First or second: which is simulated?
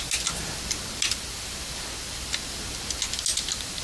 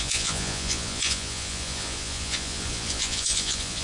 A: second